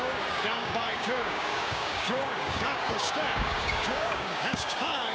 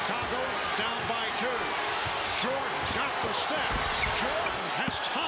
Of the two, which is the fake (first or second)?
first